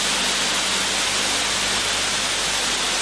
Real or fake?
real